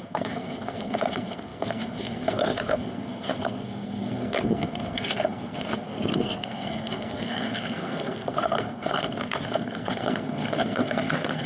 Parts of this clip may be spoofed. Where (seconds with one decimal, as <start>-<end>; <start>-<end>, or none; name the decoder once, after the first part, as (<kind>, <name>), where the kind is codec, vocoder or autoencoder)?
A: 0.0-11.5 (codec, SNAC)